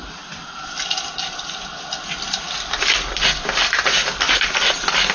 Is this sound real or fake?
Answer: real